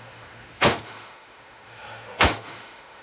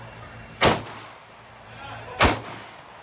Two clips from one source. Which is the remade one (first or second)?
first